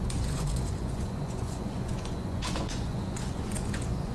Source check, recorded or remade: remade